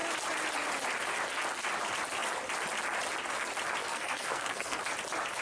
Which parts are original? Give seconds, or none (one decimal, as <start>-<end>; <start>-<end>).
0.0-3.8; 4.8-5.4